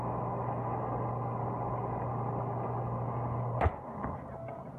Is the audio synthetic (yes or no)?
no